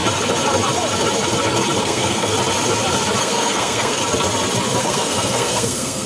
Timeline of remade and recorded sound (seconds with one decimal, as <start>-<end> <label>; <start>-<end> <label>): 0.0-1.8 recorded; 1.8-2.3 remade; 2.3-3.2 recorded; 3.2-4.0 remade; 4.0-4.8 recorded; 4.8-6.1 remade

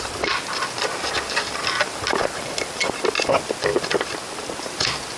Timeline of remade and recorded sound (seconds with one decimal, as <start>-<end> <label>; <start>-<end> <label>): 0.0-5.2 recorded

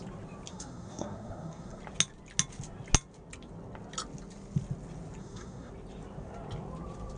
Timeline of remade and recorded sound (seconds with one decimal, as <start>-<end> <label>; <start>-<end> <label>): 0.0-0.5 recorded; 0.5-1.8 remade; 1.8-5.2 recorded; 5.2-5.7 remade; 5.7-7.2 recorded

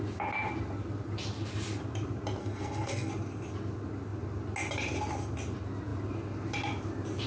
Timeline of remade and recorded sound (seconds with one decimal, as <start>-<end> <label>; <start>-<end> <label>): 0.0-2.4 recorded; 2.4-3.1 remade; 3.1-7.3 recorded

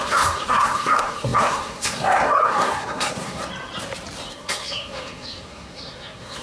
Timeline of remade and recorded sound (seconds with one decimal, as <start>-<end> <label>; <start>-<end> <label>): 0.0-3.4 remade; 3.4-4.3 recorded; 4.3-6.4 remade